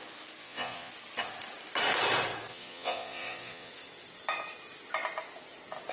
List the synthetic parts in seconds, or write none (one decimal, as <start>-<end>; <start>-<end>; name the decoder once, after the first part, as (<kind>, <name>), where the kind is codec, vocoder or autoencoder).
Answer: 0.4-0.9 (vocoder, Vocos); 2.5-3.7